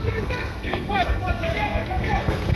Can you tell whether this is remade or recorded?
remade